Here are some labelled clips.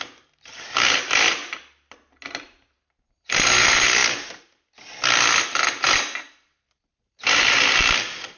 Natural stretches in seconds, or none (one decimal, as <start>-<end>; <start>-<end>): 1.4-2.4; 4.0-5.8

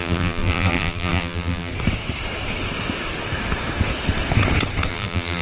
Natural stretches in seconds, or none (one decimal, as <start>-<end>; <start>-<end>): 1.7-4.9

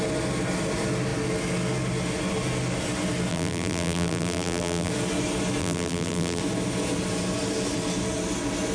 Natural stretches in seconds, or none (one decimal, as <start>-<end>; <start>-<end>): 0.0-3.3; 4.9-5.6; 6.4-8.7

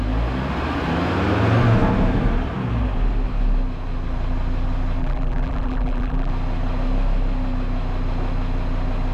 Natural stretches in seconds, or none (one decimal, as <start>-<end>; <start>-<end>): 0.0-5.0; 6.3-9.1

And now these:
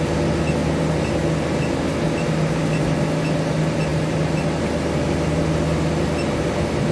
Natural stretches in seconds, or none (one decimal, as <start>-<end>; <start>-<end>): 0.0-0.6; 1.2-3.9; 4.5-6.9

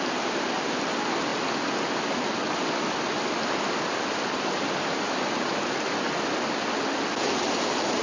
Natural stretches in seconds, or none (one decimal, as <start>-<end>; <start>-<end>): 0.0-1.3; 1.8-8.0

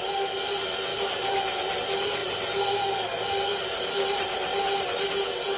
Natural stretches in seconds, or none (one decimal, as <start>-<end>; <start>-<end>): 0.0-5.6